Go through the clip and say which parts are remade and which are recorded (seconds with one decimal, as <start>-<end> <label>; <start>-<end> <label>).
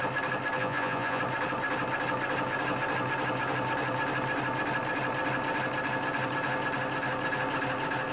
0.0-0.6 recorded; 0.6-1.2 remade; 1.2-8.1 recorded